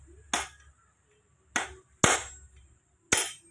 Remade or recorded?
recorded